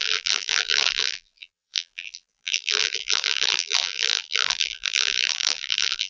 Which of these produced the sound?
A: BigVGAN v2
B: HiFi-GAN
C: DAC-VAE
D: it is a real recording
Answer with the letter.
A